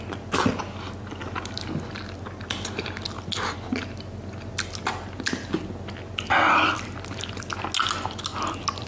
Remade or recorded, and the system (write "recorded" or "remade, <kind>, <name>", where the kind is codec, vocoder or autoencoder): recorded